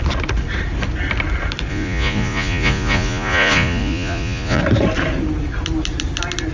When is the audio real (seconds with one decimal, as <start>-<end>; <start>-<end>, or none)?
0.0-1.7; 4.6-6.5